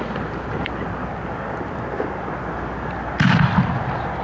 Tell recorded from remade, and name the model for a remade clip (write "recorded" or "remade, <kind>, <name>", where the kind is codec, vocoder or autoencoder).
recorded